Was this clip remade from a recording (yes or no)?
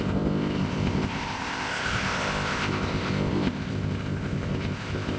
yes